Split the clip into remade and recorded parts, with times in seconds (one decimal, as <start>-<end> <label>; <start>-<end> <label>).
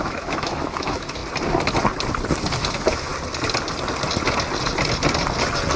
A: 0.0-1.2 remade; 1.2-2.7 recorded; 2.7-3.1 remade; 3.1-5.8 recorded